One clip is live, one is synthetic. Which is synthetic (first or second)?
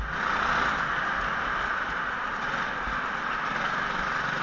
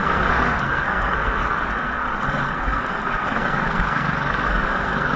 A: second